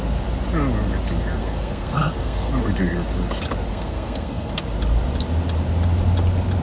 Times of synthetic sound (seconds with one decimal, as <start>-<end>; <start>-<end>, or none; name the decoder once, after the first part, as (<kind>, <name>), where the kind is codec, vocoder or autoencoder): 1.4-2.5 (codec, SNAC); 3.7-4.5